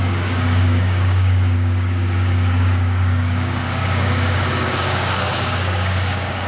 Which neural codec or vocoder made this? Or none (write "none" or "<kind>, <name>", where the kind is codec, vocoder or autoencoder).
codec, DAC